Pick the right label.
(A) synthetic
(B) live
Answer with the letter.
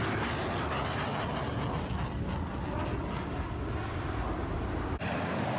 B